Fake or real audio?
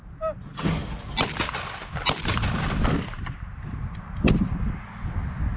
real